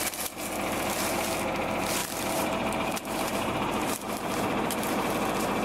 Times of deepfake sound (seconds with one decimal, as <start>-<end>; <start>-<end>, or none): 2.0-5.1